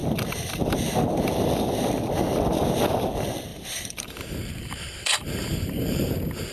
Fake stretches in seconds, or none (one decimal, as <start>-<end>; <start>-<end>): 3.5-6.1